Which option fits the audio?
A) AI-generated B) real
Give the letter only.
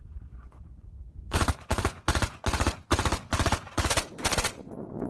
A